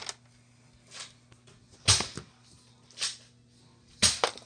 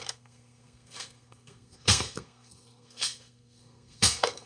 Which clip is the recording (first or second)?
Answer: first